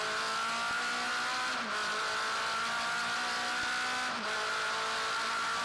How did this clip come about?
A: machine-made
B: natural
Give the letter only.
B